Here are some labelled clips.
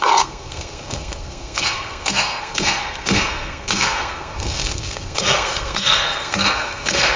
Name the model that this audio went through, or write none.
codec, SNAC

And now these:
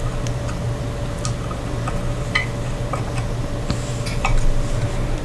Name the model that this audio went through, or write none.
none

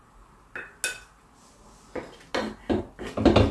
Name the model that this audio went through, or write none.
none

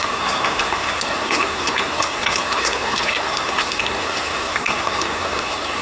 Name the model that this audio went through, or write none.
codec, SNAC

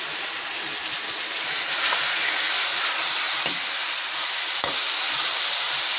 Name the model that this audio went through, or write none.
none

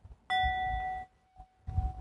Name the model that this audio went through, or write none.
none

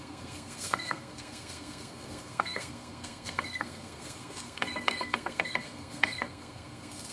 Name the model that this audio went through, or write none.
codec, SNAC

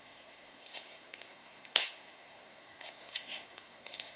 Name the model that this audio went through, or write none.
codec, SNAC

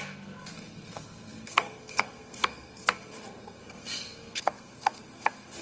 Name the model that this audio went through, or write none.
codec, SNAC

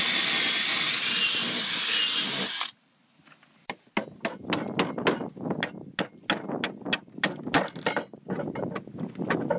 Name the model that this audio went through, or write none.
none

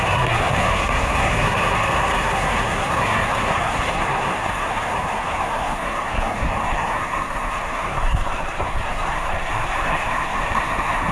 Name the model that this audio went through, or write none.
codec, SNAC